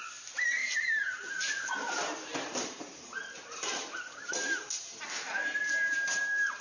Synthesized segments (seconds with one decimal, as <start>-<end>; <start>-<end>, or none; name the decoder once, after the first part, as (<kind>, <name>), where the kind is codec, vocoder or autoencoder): 0.6-1.7 (vocoder, BigVGAN v2); 2.3-5.0